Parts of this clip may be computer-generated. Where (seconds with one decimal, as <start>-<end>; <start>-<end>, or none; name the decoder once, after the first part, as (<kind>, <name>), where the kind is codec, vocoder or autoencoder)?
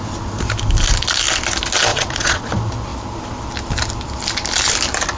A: 1.9-2.5 (vocoder, Vocos)